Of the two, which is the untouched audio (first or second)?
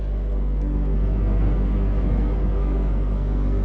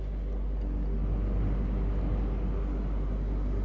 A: second